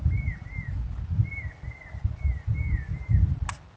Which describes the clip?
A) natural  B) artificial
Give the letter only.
A